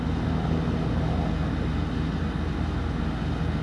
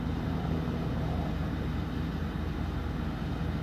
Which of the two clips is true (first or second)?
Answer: first